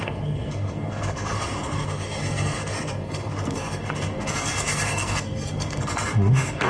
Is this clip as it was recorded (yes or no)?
no